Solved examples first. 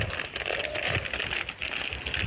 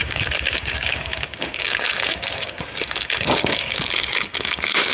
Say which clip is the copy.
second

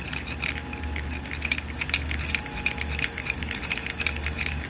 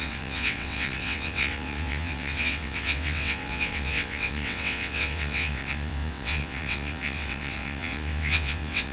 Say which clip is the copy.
second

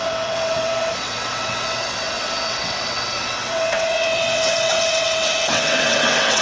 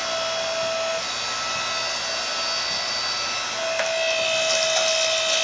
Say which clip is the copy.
first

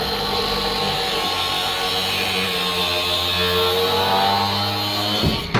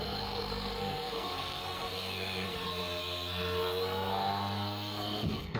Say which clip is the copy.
second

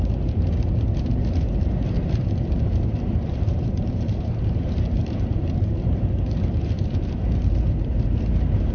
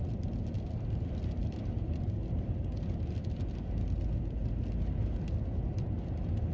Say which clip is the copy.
first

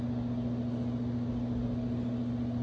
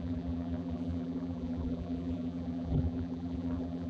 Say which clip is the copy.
second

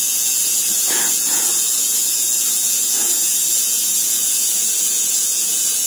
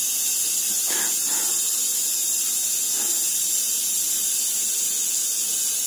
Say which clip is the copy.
first